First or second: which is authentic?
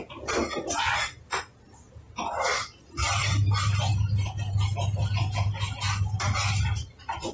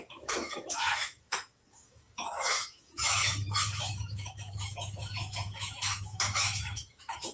first